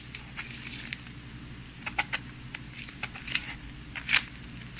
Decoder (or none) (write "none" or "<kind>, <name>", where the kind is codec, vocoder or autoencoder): none